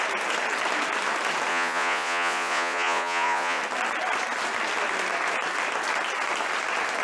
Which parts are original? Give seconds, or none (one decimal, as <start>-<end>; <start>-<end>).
0.0-1.5; 3.6-7.0